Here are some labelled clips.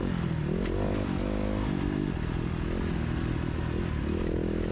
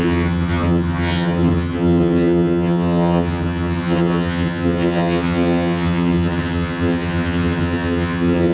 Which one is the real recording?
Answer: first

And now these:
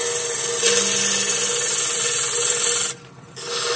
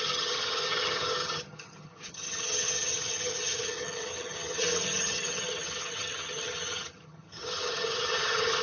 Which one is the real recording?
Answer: first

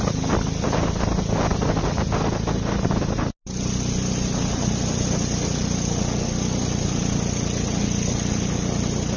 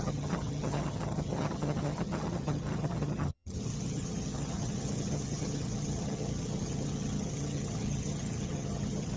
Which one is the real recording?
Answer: first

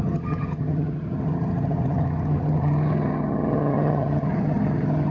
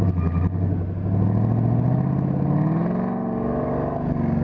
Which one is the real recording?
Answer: second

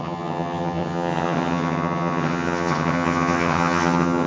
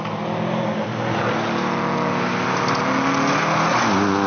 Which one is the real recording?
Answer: second